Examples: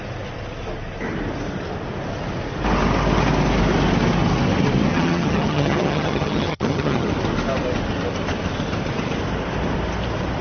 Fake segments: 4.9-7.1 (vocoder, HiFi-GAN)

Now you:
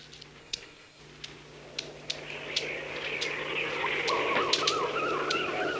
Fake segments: 0.4-1.0 (codec, SNAC)